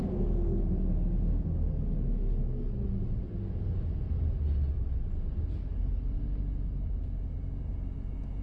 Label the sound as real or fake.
real